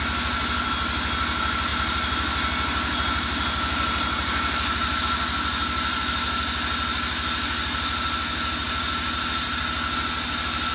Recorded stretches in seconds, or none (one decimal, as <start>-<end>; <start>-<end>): 0.0-10.7